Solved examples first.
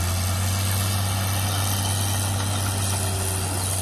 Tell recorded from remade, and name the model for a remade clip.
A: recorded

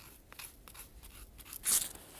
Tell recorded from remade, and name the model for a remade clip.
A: recorded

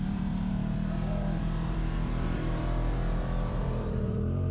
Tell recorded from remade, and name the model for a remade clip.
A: remade, vocoder, BigVGAN v2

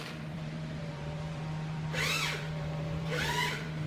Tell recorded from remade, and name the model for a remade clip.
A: remade, vocoder, BigVGAN v2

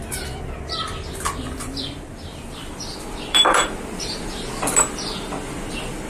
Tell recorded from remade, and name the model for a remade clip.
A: remade, vocoder, BigVGAN v2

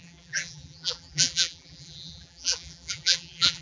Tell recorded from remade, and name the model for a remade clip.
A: remade, vocoder, BigVGAN v2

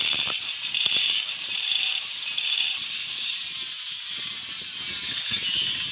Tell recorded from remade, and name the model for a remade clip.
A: remade, vocoder, BigVGAN v2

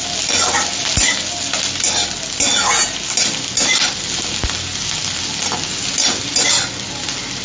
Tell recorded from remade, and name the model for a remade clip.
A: recorded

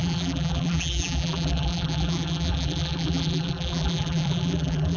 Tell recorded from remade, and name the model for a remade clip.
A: remade, vocoder, BigVGAN v2